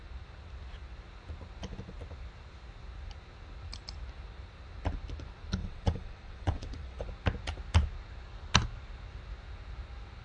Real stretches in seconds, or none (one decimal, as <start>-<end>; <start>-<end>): 0.0-5.6; 7.0-10.2